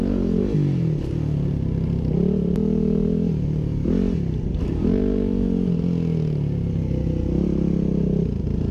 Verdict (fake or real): real